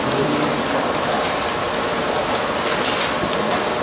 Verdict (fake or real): real